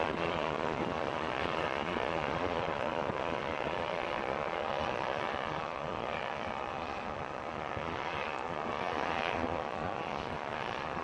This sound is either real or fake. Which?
fake